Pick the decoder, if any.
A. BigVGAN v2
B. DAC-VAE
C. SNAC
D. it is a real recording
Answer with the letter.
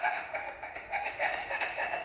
B